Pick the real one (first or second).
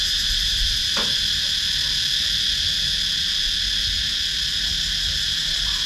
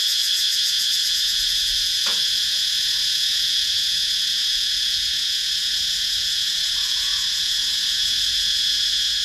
first